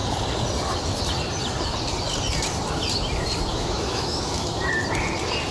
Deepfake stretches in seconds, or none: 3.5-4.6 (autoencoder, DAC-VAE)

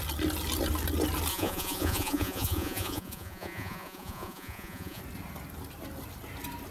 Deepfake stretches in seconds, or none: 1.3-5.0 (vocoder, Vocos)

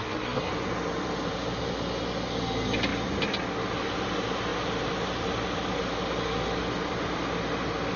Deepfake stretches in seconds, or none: 0.0-0.5 (codec, SNAC)

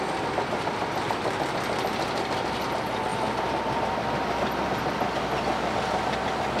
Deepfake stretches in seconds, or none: none

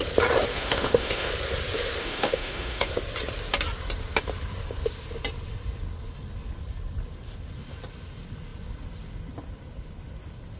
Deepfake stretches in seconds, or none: 0.5-1.3 (autoencoder, DAC-VAE); 2.0-2.9

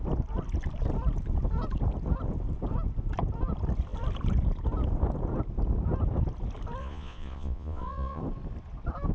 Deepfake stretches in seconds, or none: 6.8-8.2 (vocoder, Vocos)

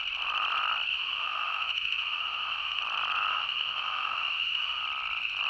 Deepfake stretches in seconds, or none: 0.9-2.8 (autoencoder, DAC-VAE); 3.3-4.8